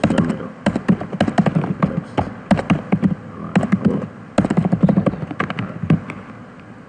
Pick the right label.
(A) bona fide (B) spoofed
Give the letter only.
A